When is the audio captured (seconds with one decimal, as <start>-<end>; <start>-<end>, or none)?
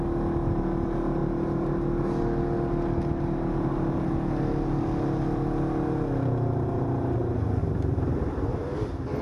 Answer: 0.0-7.6